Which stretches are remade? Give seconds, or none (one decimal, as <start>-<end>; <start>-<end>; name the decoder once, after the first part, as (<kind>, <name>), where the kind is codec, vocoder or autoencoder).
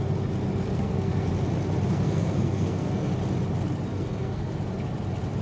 0.7-1.3 (codec, SNAC); 1.9-3.1; 3.9-4.6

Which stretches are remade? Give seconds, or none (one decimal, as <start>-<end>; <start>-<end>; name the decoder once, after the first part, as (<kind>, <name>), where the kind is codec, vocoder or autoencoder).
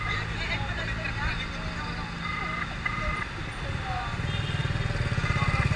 none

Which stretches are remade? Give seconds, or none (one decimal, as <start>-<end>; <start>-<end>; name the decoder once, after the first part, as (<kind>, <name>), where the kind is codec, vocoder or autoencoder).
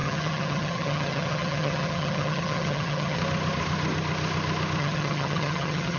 0.0-3.2 (vocoder, HiFi-GAN); 4.8-6.0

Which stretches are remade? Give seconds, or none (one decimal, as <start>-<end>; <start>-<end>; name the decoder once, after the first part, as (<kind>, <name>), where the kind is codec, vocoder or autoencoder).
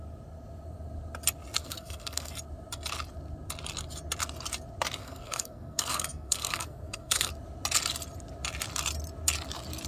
1.6-2.3 (codec, SNAC); 5.0-7.3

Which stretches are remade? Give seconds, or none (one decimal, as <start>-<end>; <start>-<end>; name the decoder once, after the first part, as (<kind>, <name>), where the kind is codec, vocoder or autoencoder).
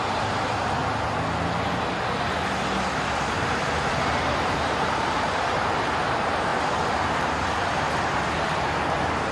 0.0-0.8 (vocoder, BigVGAN v2); 3.3-6.5; 7.2-9.3